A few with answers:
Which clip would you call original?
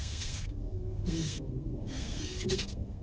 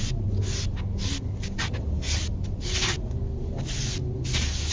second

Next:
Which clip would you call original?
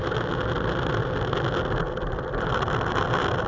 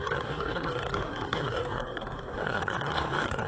first